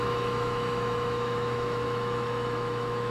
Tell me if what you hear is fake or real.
fake